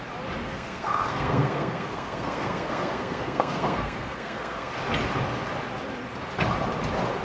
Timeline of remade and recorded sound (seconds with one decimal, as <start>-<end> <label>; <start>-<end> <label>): 0.0-0.4 recorded; 0.4-4.7 remade; 4.7-7.2 recorded